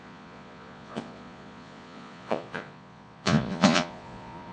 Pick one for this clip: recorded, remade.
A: remade